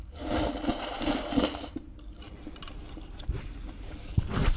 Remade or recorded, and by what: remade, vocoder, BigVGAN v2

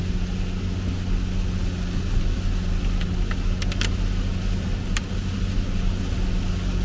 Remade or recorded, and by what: recorded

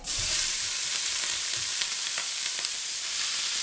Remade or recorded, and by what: remade, vocoder, BigVGAN v2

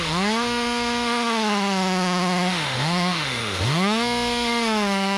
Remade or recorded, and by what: remade, autoencoder, DAC-VAE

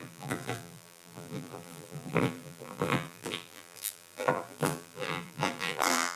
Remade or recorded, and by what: remade, vocoder, BigVGAN v2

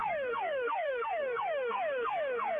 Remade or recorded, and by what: remade, codec, SNAC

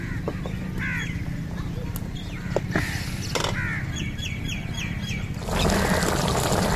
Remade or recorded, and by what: recorded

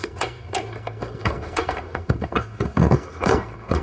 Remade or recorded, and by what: remade, codec, SNAC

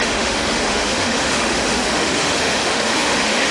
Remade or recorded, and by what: remade, autoencoder, DAC-VAE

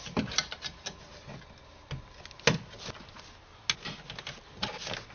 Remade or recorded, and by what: recorded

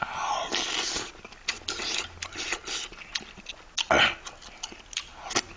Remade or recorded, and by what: recorded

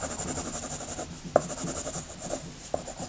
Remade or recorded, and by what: recorded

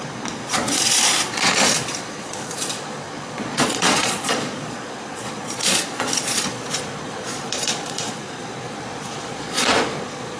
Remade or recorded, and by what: remade, vocoder, Vocos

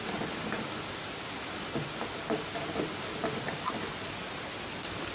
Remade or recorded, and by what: recorded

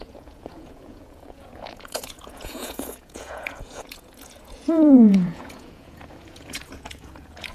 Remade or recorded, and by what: remade, vocoder, Vocos